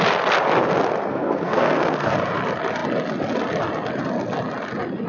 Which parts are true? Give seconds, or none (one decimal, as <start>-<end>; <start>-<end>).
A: 0.0-1.1; 2.1-5.1